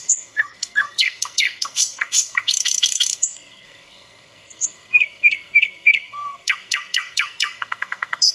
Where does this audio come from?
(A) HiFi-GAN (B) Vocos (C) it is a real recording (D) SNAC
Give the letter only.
D